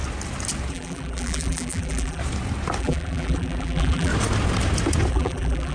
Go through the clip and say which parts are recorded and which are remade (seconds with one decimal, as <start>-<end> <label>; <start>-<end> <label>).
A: 0.0-0.7 recorded; 0.7-2.2 remade; 2.2-2.8 recorded; 2.8-4.1 remade; 4.1-5.1 recorded; 5.1-5.7 remade